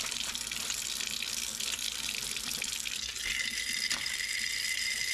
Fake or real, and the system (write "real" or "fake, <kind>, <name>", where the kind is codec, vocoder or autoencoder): fake, vocoder, BigVGAN v2